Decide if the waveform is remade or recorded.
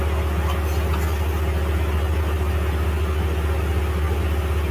recorded